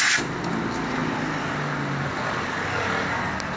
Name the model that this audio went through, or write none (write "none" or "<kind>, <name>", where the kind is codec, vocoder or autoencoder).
none